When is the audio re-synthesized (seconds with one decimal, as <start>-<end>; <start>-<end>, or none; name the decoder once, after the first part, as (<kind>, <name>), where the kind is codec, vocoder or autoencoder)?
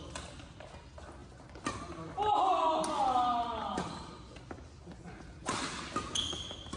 none